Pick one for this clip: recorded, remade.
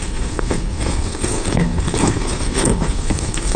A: remade